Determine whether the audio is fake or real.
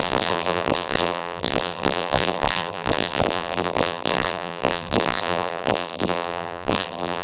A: fake